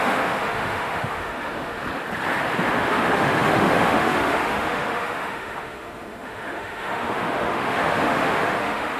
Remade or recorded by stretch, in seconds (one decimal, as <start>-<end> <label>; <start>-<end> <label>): 0.0-1.8 remade; 1.8-2.7 recorded; 2.7-9.0 remade